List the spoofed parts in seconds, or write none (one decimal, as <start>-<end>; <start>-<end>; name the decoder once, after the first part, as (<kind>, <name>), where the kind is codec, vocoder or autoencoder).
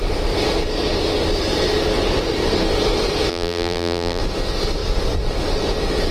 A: 3.3-4.2 (vocoder, BigVGAN v2)